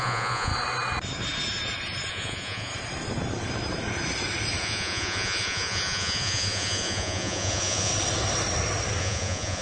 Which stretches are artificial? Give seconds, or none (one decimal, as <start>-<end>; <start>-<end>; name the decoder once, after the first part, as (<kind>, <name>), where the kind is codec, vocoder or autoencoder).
0.0-0.5 (vocoder, Vocos); 2.1-2.7; 4.6-7.9; 9.0-9.6